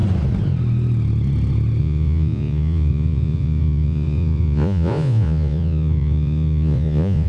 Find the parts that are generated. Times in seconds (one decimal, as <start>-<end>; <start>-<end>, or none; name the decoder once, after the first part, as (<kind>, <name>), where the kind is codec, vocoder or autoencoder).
1.8-7.3 (vocoder, Vocos)